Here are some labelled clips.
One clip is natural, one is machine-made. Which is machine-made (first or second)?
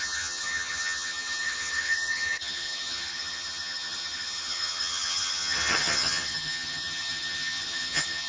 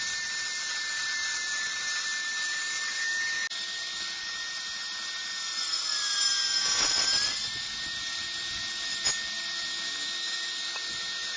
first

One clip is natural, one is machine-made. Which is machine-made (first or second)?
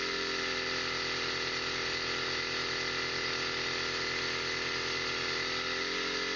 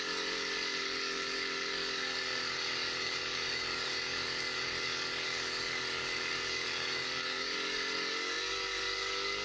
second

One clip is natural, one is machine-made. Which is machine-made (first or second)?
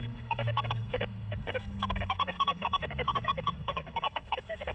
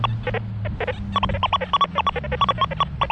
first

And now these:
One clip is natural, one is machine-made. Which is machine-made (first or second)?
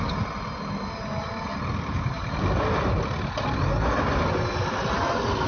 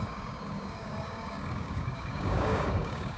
second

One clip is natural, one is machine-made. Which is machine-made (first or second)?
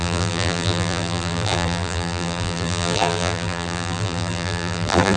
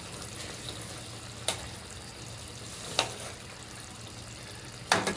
first